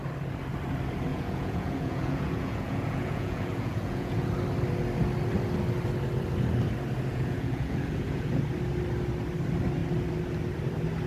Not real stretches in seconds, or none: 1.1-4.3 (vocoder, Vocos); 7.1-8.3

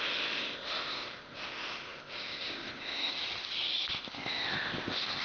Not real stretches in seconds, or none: 0.0-3.1 (codec, ZipCodec); 3.9-5.2